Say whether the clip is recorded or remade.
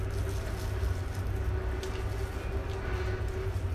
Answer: recorded